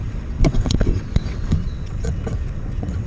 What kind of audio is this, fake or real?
fake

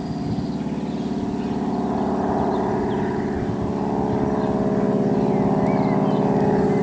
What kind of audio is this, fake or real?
real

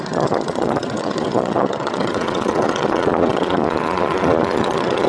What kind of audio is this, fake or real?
fake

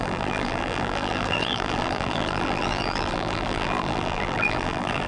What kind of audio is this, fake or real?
fake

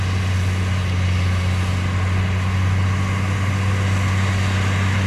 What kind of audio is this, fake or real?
real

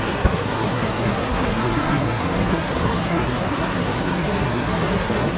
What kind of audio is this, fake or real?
fake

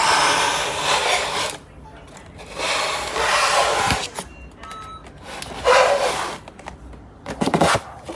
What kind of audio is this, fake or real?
real